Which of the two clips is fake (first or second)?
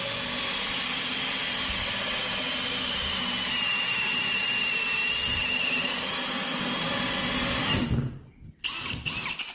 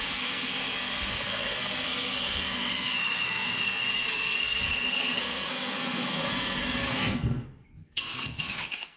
second